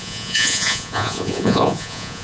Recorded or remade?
remade